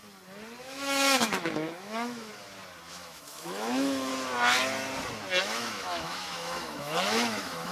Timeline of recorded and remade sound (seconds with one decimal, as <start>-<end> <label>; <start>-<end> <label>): 0.0-0.6 recorded; 0.6-2.3 remade; 2.3-2.9 recorded; 2.9-4.1 remade; 4.1-5.4 recorded; 5.4-7.7 remade